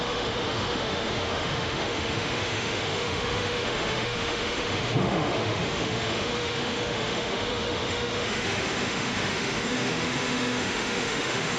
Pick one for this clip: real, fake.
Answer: fake